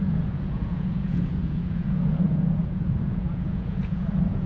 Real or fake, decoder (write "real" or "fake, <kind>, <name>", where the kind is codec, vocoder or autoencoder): fake, vocoder, Vocos